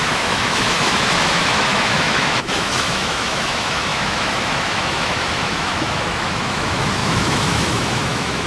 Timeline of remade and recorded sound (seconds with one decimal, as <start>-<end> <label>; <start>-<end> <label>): 0.0-8.5 remade